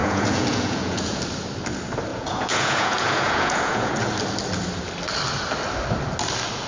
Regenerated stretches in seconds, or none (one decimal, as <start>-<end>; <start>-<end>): 0.0-1.2; 2.1-3.9

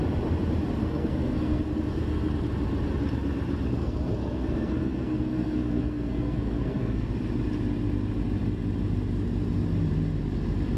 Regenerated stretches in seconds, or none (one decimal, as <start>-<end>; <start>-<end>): 0.8-1.6; 3.8-7.1

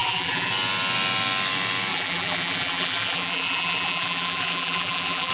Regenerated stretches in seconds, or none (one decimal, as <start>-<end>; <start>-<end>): 0.0-0.5; 1.9-5.3

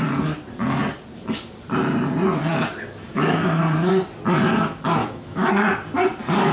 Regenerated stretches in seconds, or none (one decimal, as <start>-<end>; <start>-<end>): 3.1-3.6; 5.0-5.5

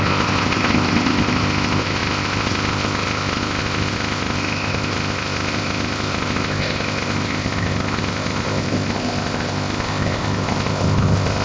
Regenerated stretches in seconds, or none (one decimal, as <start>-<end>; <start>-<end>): 0.0-11.4

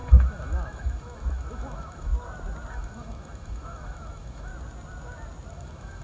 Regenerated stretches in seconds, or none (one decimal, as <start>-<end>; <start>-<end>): 0.0-2.1; 2.7-4.5; 5.5-6.0

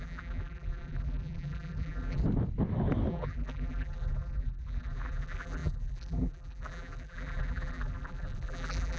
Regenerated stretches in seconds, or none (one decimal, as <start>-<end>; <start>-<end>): 0.0-2.2; 3.1-9.0